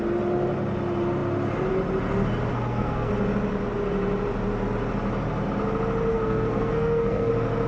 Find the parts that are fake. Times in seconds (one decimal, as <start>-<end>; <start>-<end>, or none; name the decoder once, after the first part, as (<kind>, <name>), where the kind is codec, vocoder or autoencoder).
2.5-3.1 (codec, SNAC); 6.1-7.3